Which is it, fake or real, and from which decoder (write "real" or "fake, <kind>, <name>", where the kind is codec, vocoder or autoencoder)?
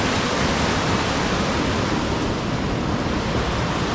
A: real